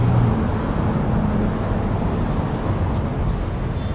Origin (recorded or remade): recorded